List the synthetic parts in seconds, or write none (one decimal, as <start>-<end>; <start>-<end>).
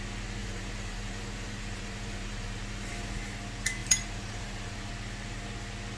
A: 0.4-2.9; 3.8-4.9